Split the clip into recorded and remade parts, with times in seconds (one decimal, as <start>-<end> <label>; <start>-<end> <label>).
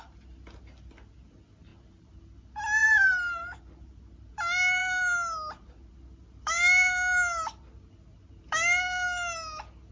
0.0-1.7 recorded; 1.7-2.2 remade; 2.2-2.8 recorded; 2.8-4.3 remade; 4.3-9.9 recorded